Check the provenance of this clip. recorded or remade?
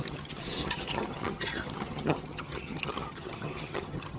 remade